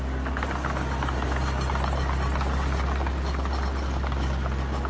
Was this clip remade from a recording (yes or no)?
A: no